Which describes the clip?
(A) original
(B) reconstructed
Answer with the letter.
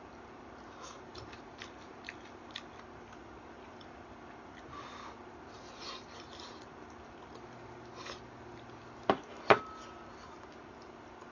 A